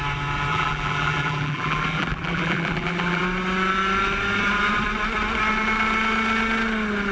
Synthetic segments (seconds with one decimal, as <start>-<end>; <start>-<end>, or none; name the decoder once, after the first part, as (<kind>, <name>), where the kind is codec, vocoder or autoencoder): 0.5-3.2 (vocoder, BigVGAN v2)